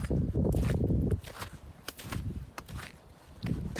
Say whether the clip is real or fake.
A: real